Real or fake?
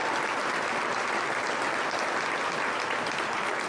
real